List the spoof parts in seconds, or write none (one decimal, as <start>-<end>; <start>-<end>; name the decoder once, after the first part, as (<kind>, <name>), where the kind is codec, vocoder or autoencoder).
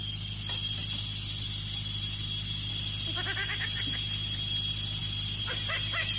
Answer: none